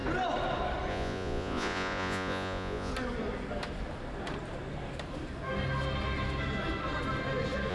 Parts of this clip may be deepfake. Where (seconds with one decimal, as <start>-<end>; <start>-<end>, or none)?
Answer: 0.9-2.9